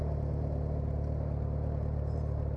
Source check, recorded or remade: recorded